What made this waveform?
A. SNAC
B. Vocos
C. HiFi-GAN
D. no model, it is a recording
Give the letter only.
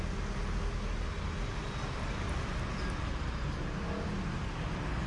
D